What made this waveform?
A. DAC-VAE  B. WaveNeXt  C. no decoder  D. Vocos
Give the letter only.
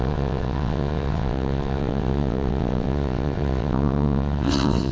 B